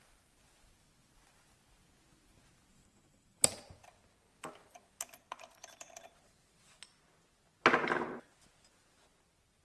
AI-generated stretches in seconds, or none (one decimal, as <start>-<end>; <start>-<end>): 2.7-3.5